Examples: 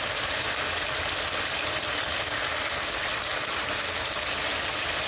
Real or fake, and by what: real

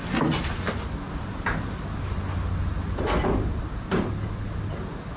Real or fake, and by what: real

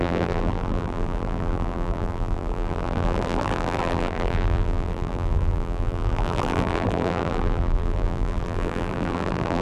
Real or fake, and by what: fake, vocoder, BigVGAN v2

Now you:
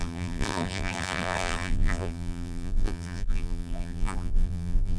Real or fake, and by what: fake, vocoder, BigVGAN v2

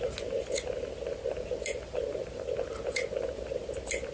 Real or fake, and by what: real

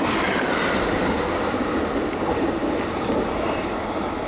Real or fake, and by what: real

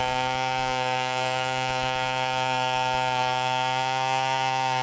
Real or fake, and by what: fake, codec, DAC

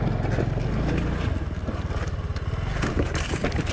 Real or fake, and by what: real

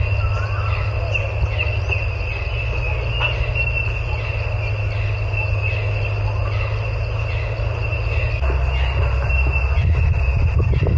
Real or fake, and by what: real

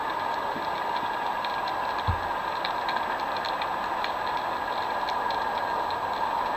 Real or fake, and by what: real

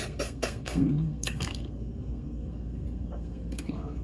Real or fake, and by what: fake, codec, SNAC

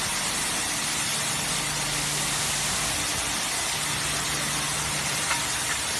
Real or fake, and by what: real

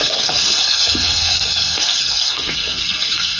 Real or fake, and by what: fake, codec, SNAC